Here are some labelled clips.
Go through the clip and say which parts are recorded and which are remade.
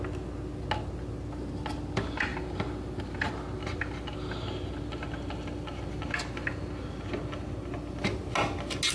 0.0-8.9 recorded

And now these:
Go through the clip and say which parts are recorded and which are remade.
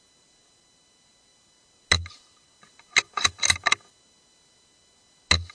0.0-5.5 recorded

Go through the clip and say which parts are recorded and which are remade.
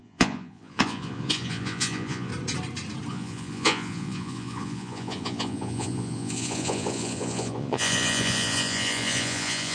0.0-2.3 remade; 2.3-3.1 recorded; 3.1-9.7 remade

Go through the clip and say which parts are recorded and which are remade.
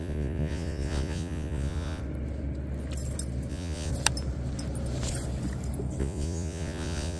0.0-2.0 remade; 2.0-3.5 recorded; 3.5-3.9 remade; 3.9-6.0 recorded; 6.0-7.2 remade